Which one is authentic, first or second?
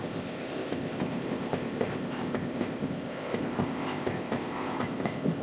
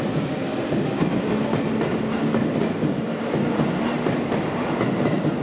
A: second